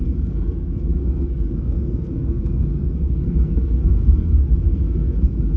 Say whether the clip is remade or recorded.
remade